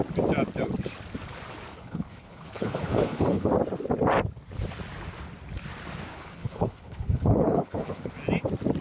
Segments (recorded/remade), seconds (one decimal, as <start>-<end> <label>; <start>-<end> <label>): 0.0-1.7 recorded; 1.7-3.5 remade; 3.5-6.1 recorded; 6.1-8.1 remade; 8.1-8.8 recorded